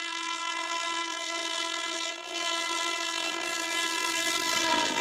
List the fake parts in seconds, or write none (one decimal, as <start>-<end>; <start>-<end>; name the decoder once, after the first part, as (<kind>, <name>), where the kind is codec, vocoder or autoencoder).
0.0-5.0 (vocoder, BigVGAN v2)